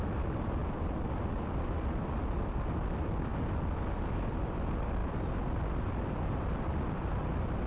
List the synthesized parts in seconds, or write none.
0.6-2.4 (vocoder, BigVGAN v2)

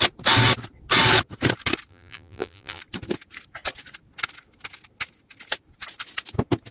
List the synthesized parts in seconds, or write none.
1.9-2.8 (vocoder, BigVGAN v2)

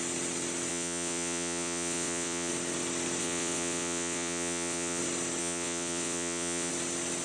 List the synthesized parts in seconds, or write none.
0.7-2.5 (vocoder, WaveNeXt); 3.2-5.0; 5.4-6.7